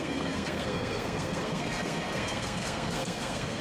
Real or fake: fake